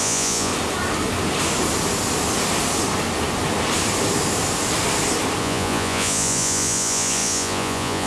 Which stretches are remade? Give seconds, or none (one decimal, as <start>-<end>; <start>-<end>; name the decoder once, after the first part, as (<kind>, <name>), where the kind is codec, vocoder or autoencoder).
0.0-0.5 (vocoder, Vocos); 5.4-8.1